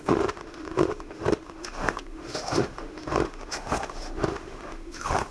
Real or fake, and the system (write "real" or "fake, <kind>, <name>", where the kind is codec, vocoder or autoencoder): fake, autoencoder, DAC-VAE